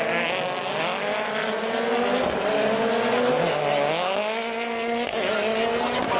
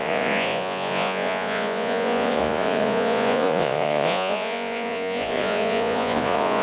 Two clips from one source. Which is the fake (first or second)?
second